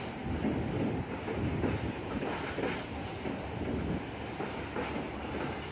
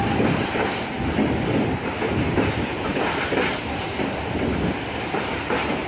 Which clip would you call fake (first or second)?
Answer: second